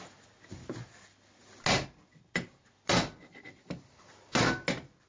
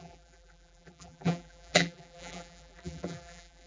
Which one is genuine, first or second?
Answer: first